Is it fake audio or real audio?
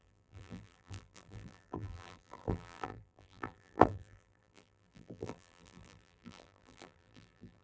fake